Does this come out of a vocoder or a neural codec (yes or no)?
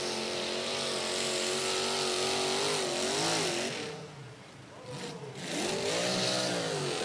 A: no